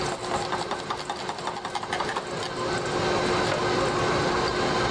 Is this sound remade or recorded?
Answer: recorded